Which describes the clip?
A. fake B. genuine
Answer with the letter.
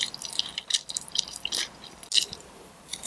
A